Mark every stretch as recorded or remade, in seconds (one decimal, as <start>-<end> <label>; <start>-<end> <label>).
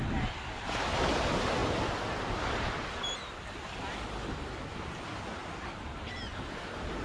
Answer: 0.0-7.0 recorded